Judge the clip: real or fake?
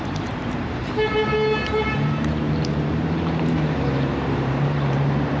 fake